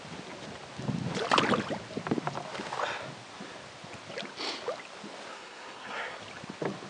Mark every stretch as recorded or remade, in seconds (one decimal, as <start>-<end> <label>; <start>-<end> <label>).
0.0-5.3 recorded; 5.3-6.2 remade; 6.2-6.9 recorded